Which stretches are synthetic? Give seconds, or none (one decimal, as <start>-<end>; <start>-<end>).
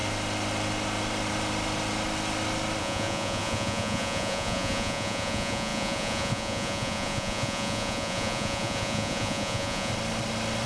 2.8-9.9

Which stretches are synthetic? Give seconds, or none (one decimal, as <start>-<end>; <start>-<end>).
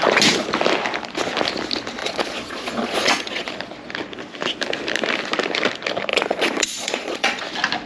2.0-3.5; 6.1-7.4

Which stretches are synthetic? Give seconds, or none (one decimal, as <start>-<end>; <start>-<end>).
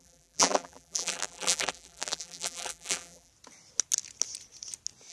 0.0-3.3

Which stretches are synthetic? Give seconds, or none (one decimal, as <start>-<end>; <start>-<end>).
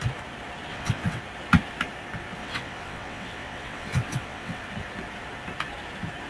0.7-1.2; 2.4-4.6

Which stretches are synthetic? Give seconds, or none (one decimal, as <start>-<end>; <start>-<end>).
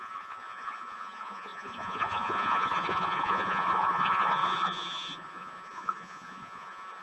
0.0-7.0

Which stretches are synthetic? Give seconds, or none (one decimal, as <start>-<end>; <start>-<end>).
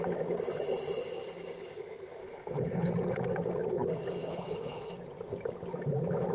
2.2-2.9; 4.3-4.9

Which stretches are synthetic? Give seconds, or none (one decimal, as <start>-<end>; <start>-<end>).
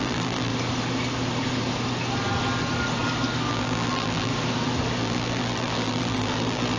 0.0-0.5; 3.5-4.3; 5.0-6.8